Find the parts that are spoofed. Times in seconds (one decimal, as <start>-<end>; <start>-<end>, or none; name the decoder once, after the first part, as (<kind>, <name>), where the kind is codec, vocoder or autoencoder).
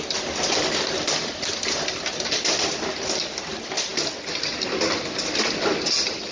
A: none